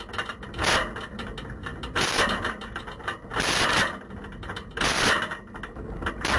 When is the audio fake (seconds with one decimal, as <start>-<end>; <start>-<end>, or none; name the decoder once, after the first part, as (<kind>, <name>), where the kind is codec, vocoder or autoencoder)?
none